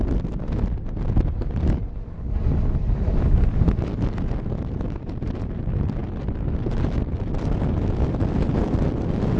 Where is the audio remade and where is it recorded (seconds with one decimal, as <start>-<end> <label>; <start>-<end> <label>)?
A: 0.0-9.4 recorded